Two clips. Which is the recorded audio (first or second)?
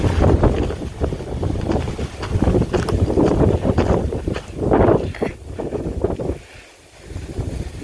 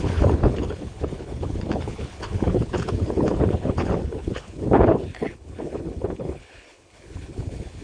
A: first